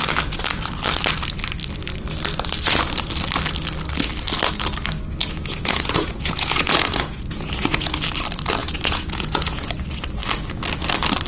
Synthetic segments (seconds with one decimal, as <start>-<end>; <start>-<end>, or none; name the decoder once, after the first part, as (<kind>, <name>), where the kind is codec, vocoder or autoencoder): 5.2-7.9 (vocoder, Vocos); 8.6-9.7

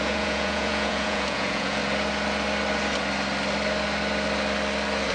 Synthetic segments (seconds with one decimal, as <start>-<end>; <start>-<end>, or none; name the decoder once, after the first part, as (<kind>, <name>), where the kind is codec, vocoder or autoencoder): 0.0-1.8 (vocoder, Vocos)

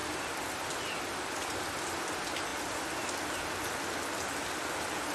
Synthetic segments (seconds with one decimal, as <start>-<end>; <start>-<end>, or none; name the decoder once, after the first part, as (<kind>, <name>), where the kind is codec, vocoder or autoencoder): none

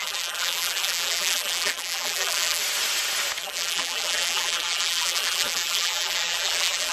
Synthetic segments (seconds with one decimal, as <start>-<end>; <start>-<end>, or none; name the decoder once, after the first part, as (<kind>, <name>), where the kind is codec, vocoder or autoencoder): 0.0-2.6 (vocoder, BigVGAN v2); 3.4-6.9

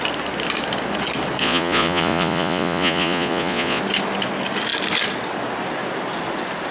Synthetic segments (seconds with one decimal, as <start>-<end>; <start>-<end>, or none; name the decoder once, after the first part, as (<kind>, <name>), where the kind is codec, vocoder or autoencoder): 1.4-3.8 (vocoder, Vocos)